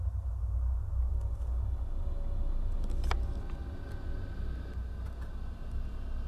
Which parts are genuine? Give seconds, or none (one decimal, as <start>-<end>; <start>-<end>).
0.0-6.3